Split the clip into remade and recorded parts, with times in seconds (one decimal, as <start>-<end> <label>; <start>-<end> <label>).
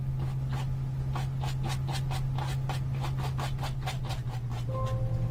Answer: 0.0-5.3 recorded